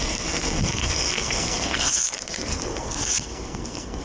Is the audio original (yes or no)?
no